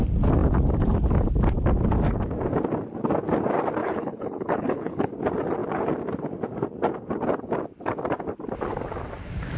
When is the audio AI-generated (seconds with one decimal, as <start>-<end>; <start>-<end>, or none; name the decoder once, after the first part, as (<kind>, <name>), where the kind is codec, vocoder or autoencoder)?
3.8-5.1 (codec, HILCodec)